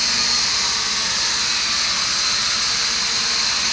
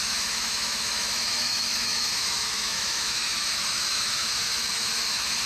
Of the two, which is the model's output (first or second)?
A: second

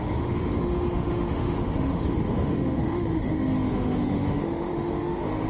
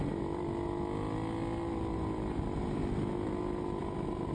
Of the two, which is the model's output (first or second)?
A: first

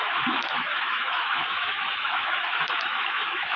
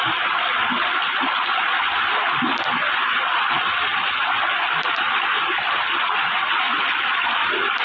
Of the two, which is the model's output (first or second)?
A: first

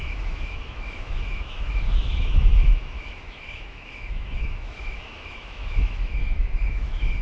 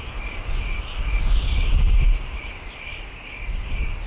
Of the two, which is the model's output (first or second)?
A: first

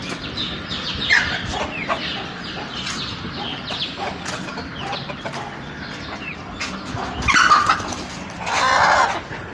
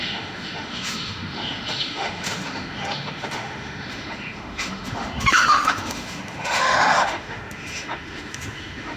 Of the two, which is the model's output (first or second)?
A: second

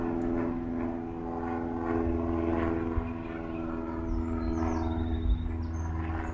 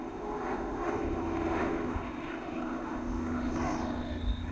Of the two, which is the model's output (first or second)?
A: second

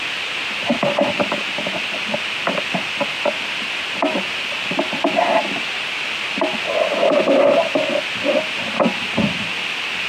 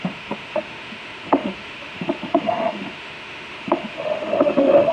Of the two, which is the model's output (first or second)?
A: second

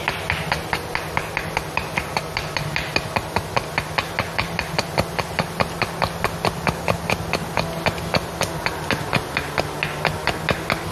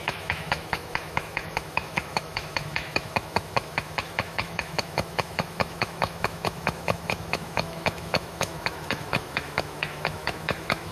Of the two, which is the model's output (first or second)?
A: second